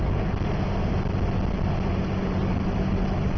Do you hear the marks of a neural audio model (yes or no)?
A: no